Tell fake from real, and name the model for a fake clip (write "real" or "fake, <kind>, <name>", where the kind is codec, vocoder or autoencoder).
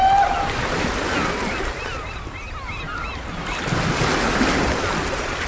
real